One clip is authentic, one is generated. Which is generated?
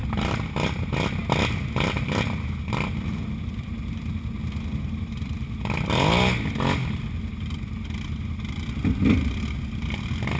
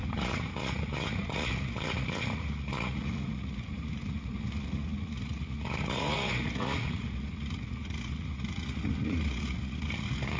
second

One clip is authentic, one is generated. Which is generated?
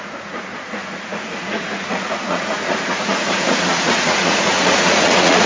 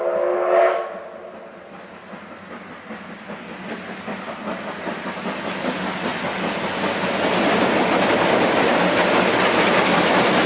first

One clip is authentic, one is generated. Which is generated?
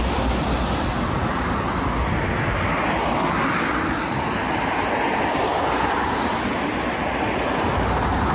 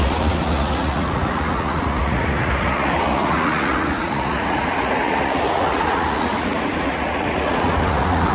second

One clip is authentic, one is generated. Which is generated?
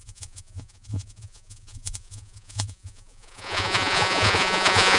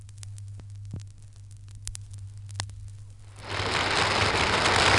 first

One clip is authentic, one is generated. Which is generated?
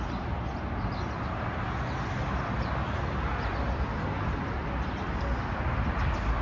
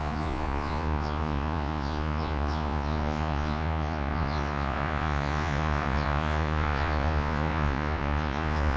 second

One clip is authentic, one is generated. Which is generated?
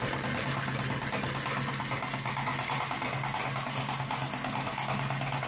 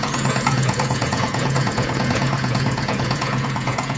second